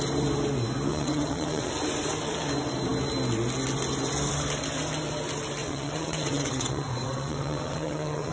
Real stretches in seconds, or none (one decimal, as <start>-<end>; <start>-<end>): 0.0-0.9; 1.7-5.6